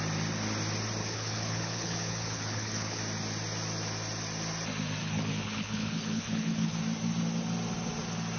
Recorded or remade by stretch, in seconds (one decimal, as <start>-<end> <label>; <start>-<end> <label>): 0.0-1.0 recorded; 1.0-3.0 remade; 3.0-5.0 recorded; 5.0-6.8 remade; 6.8-8.4 recorded